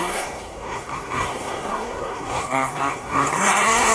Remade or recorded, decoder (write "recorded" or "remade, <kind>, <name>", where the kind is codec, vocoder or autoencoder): remade, codec, SNAC